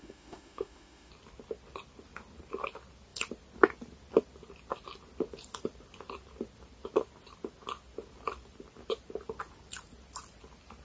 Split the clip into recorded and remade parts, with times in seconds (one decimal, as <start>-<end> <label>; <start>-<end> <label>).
0.0-1.1 remade; 1.1-10.8 recorded